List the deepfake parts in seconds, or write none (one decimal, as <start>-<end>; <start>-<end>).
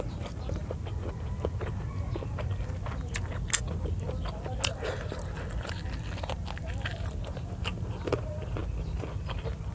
none